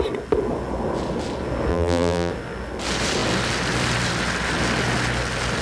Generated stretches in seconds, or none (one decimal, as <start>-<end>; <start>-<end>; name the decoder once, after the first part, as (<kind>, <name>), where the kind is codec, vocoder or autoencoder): 1.7-2.3 (vocoder, BigVGAN v2)